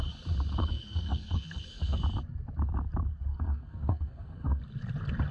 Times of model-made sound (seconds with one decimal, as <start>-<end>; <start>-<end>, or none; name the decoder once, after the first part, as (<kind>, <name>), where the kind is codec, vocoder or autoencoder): 0.6-2.0 (codec, SNAC); 3.3-4.6